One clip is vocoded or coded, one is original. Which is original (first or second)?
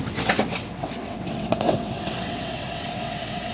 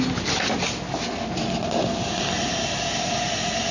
second